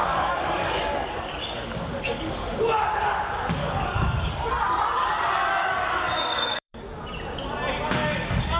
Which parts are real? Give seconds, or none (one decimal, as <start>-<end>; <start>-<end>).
2.6-3.6; 4.3-5.6; 6.8-8.0